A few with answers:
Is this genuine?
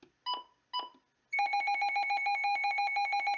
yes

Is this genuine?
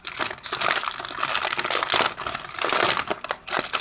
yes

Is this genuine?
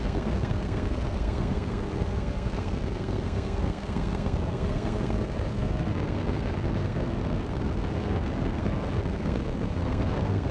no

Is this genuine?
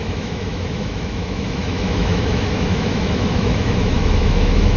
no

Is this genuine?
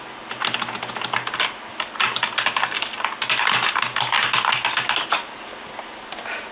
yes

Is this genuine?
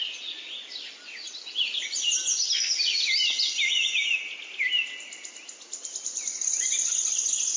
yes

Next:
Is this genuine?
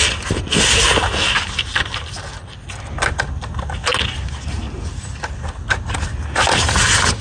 yes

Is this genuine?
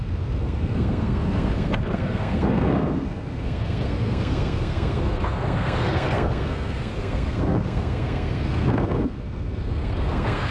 no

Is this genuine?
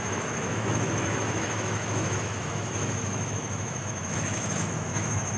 no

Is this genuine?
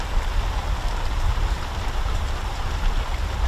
yes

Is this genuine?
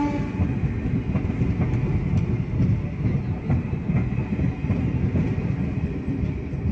yes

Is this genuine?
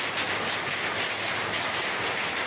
yes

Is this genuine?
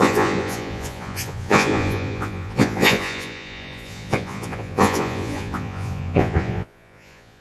no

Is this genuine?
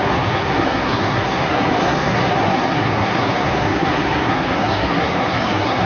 no